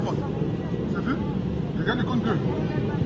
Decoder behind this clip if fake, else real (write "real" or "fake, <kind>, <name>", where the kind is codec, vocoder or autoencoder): fake, vocoder, BigVGAN v2